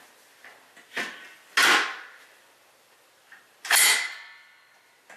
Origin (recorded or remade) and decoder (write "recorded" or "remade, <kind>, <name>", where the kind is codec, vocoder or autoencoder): recorded